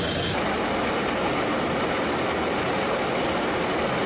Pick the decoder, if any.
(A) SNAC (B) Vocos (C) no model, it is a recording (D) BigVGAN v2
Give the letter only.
C